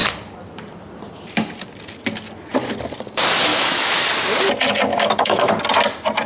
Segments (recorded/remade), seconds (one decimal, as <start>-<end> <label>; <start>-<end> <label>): 0.0-3.5 recorded; 3.5-4.1 remade; 4.1-4.9 recorded; 4.9-5.5 remade; 5.5-6.3 recorded